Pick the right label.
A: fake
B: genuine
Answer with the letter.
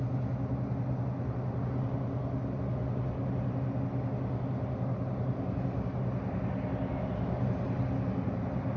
B